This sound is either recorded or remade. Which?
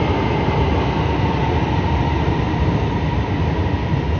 recorded